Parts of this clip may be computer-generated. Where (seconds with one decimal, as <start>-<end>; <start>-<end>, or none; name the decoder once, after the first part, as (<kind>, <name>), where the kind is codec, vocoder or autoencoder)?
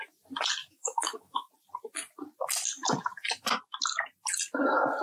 0.6-1.5 (autoencoder, DAC-VAE)